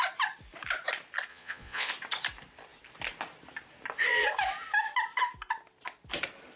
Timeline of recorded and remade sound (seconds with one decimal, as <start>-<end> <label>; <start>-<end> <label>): 0.0-1.3 recorded; 1.3-1.9 remade; 1.9-6.6 recorded